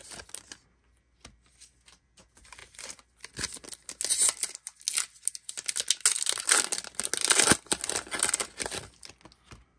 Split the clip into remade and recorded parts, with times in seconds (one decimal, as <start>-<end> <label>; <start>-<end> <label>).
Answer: 0.0-9.8 recorded